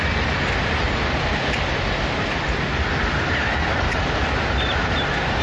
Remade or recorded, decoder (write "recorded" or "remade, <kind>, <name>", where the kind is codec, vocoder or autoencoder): recorded